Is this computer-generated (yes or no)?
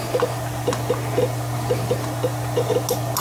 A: no